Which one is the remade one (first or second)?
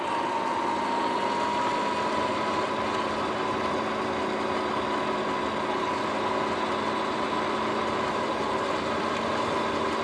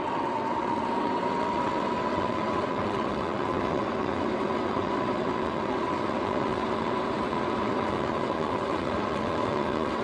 second